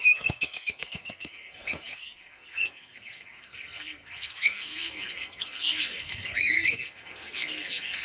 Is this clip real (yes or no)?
no